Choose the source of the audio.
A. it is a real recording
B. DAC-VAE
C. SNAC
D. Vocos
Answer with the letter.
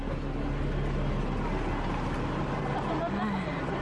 A